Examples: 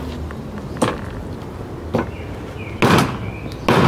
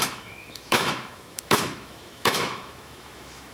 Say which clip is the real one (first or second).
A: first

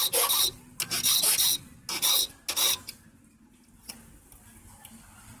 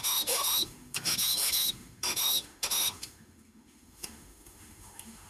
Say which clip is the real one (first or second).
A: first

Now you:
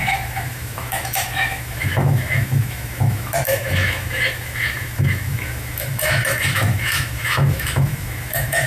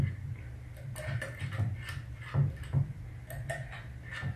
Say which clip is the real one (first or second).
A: second